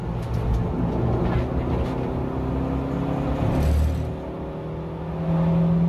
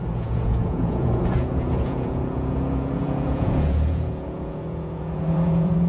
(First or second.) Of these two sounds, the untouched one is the first